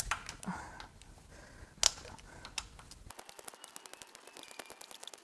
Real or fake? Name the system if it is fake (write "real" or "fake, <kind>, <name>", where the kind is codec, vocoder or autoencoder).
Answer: real